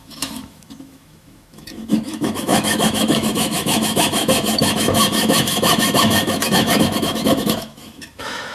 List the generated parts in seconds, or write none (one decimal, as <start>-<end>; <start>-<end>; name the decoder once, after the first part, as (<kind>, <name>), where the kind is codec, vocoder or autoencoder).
0.0-8.5 (autoencoder, DAC-VAE)